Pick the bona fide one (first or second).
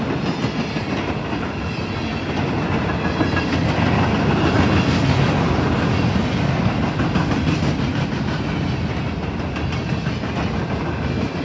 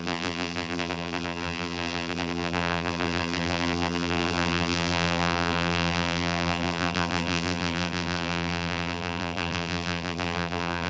first